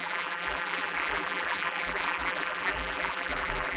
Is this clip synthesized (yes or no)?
yes